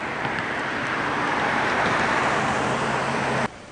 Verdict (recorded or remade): remade